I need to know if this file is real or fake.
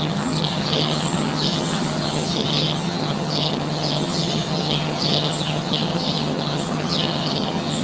fake